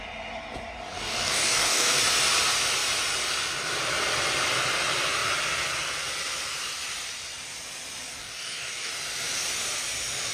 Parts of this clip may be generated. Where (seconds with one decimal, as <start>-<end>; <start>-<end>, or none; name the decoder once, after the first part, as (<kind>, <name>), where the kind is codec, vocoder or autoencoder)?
0.9-2.0 (codec, DAC); 8.2-8.9